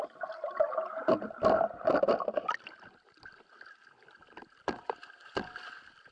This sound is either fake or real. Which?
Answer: real